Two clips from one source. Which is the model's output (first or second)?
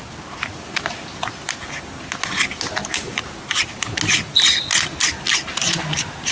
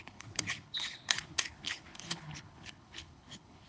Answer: second